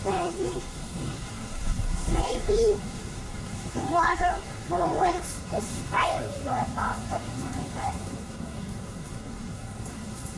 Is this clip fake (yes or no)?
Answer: yes